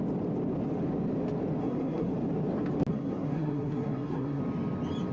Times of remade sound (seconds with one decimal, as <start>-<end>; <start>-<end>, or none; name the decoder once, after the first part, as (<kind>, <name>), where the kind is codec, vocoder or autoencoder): 1.6-2.1 (codec, SNAC); 2.9-4.4

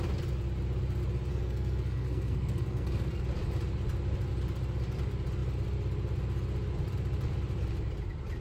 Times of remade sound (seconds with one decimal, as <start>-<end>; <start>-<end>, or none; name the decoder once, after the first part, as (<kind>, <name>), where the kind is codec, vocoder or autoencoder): 1.3-3.2 (codec, SNAC)

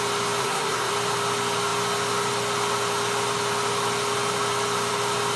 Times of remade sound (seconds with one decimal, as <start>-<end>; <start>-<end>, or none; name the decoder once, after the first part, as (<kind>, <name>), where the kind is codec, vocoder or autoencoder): 0.4-0.9 (codec, SNAC)

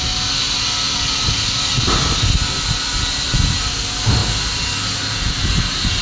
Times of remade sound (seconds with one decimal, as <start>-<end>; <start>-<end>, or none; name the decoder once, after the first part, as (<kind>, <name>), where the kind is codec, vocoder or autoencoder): none

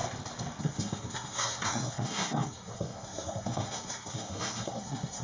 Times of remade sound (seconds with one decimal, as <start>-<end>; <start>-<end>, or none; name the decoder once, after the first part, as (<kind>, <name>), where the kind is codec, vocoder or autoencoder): 0.6-5.2 (codec, SNAC)

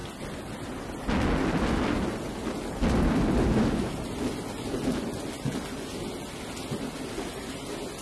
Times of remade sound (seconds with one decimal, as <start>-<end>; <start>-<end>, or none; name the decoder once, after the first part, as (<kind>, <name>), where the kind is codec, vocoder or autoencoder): none

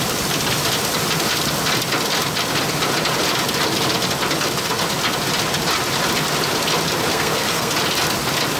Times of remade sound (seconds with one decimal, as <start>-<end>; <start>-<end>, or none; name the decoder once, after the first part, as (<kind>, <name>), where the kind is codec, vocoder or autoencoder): 7.1-7.7 (codec, SNAC)